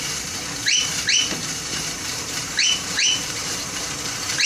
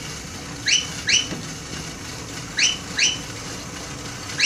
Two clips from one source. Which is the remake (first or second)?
first